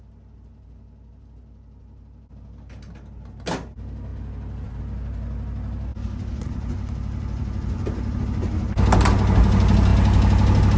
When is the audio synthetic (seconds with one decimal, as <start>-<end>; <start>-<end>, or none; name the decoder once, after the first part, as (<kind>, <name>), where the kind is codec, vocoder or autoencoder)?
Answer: 5.9-8.2 (vocoder, BigVGAN v2)